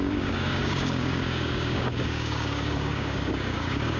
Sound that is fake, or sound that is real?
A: fake